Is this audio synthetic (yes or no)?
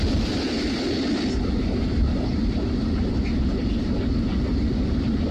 no